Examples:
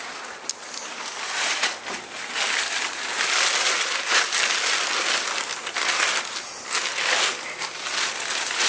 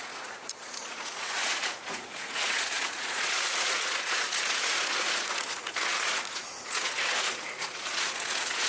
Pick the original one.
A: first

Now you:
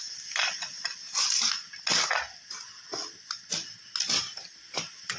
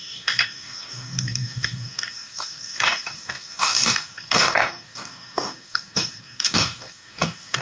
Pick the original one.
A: first